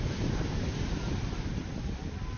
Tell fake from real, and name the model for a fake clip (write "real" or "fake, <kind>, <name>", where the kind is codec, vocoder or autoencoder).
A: real